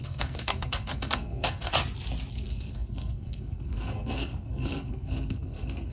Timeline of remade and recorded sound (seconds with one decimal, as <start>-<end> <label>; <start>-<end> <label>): 0.0-1.7 remade; 1.7-2.3 recorded; 2.3-5.9 remade